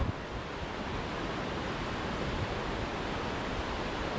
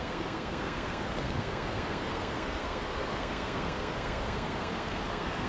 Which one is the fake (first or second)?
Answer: second